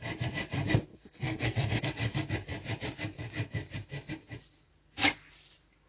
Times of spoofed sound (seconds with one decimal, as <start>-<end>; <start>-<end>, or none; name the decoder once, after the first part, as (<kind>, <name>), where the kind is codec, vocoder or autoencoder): 0.9-1.8 (codec, SNAC)